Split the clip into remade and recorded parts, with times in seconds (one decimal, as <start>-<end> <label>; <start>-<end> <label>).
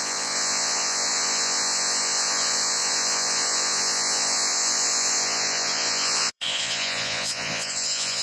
0.0-8.2 remade